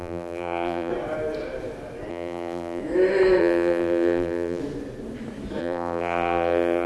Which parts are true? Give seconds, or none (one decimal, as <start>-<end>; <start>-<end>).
0.9-2.1; 2.8-3.4; 4.6-5.6